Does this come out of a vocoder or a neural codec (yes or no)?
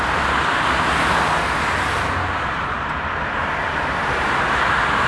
no